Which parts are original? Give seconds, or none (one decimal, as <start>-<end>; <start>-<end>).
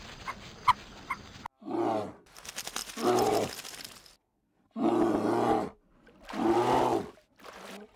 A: 0.0-8.0